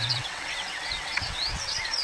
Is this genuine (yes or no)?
no